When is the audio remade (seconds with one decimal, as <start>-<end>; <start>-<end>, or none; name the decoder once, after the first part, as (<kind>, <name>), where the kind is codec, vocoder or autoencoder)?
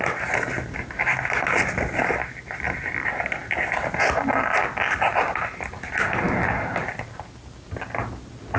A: none